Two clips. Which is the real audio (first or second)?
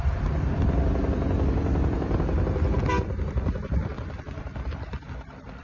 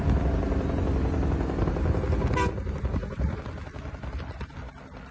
second